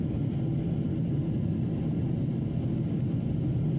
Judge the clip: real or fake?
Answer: real